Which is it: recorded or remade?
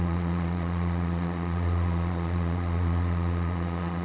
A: remade